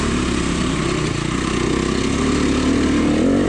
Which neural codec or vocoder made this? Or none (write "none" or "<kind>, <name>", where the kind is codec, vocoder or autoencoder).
none